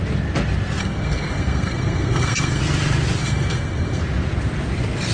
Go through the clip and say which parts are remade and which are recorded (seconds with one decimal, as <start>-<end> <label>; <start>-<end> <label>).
0.0-0.8 recorded; 0.8-2.6 remade; 2.6-3.2 recorded; 3.2-4.0 remade; 4.0-5.1 recorded